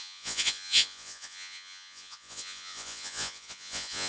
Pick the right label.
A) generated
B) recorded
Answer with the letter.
A